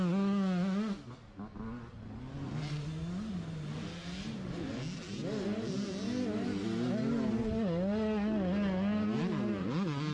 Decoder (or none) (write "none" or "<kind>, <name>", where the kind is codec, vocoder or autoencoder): none